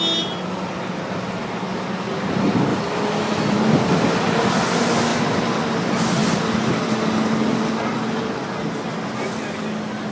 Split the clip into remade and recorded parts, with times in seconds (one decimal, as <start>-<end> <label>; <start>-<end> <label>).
0.0-2.7 recorded; 2.7-3.7 remade; 3.7-10.1 recorded